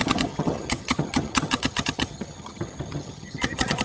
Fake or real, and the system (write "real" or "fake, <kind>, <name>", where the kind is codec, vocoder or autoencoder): fake, vocoder, HiFi-GAN